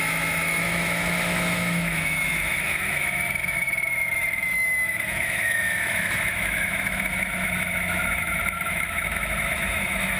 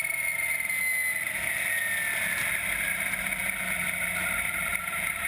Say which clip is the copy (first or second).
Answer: first